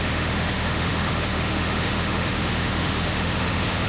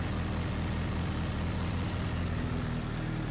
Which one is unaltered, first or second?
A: second